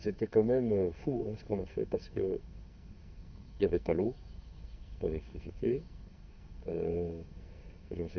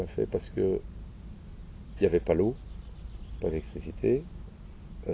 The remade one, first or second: first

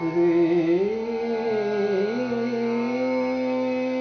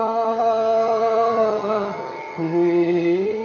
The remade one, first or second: second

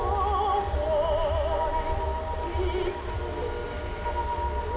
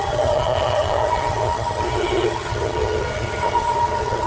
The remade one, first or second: second